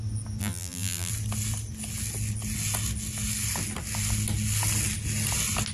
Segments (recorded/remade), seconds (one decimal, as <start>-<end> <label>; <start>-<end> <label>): 0.0-0.4 recorded; 0.4-1.1 remade; 1.1-5.7 recorded